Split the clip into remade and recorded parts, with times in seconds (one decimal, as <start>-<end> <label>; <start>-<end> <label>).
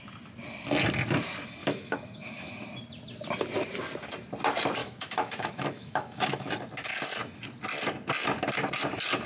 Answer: 0.0-1.6 recorded; 1.6-2.5 remade; 2.5-4.8 recorded; 4.8-6.5 remade; 6.5-9.3 recorded